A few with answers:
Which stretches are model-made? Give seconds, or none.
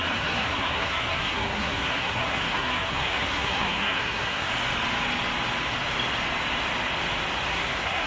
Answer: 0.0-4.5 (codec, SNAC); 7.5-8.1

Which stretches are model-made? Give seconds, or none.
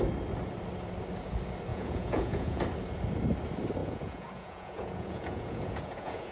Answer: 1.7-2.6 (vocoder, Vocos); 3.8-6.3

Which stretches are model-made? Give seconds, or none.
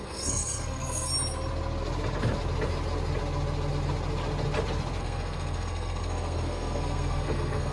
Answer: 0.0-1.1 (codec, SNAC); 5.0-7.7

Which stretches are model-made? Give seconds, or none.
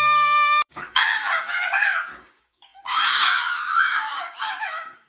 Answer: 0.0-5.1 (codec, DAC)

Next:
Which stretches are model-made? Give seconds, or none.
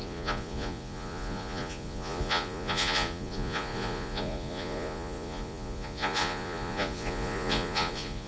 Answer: 0.0-8.3 (vocoder, Vocos)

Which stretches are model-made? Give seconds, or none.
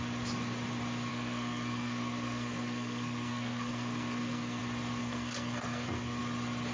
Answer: 1.1-4.6 (codec, SNAC); 5.0-6.2